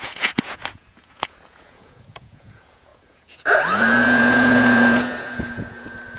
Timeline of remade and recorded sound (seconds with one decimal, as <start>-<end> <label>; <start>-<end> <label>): 0.0-6.2 remade